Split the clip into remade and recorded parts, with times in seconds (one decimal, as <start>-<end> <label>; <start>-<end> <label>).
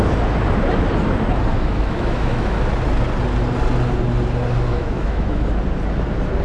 0.0-1.5 recorded; 1.5-2.6 remade; 2.6-4.7 recorded; 4.7-5.5 remade; 5.5-6.4 recorded